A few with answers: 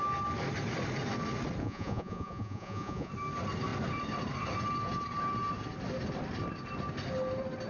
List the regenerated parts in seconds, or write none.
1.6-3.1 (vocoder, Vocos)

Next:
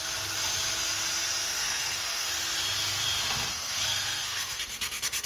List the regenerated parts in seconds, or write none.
1.4-2.3 (codec, SNAC); 3.5-5.3

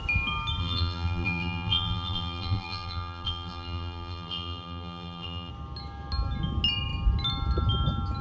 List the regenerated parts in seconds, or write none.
0.6-5.5 (vocoder, BigVGAN v2)

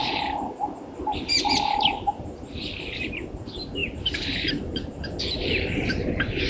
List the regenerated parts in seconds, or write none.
0.0-6.5 (vocoder, BigVGAN v2)

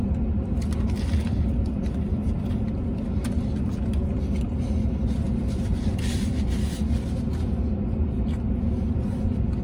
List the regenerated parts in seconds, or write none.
1.2-2.7 (vocoder, BigVGAN v2)

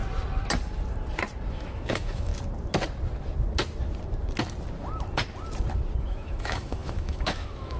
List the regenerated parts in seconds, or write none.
1.5-2.3 (autoencoder, DAC-VAE); 6.0-7.8

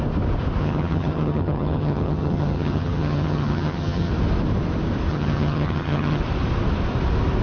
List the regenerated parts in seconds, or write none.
0.6-4.1 (vocoder, HiFi-GAN); 5.1-6.2

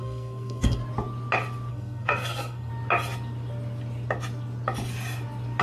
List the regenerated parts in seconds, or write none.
0.0-0.8 (codec, SNAC); 1.7-2.7